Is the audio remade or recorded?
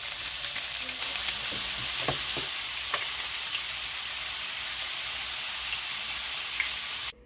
recorded